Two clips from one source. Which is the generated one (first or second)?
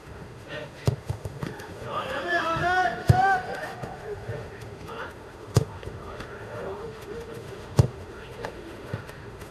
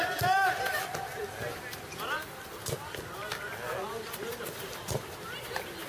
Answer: first